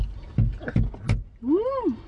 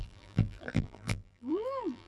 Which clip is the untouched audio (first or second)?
first